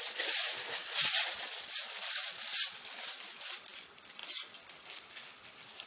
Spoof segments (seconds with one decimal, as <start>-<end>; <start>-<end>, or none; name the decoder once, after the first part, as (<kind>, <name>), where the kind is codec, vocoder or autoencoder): 0.0-4.2 (vocoder, BigVGAN v2)